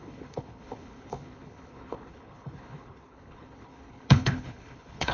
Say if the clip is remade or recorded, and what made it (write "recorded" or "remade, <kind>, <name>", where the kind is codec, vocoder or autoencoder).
remade, codec, HILCodec